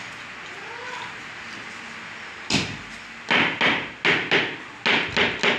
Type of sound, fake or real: real